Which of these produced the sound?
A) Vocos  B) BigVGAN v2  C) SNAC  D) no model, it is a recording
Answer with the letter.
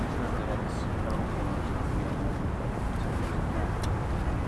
D